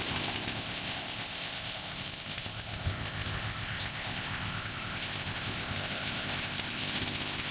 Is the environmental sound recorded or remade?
remade